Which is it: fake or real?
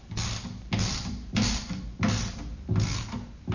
real